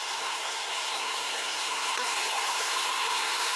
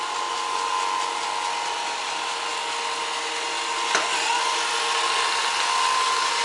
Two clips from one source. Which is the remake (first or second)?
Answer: first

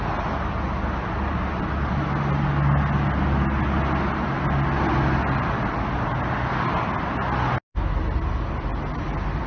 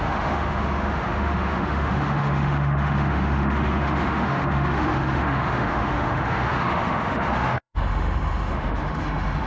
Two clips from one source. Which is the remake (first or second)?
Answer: second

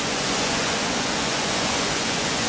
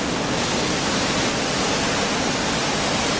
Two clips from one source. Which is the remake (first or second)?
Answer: first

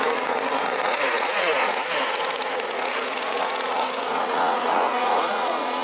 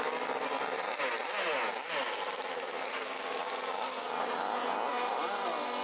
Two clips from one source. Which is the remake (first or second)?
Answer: first